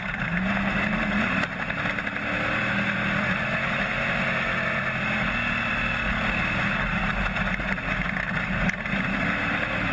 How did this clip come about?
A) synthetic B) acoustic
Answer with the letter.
B